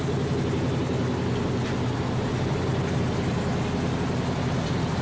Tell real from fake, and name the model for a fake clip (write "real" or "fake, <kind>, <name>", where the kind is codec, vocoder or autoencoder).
real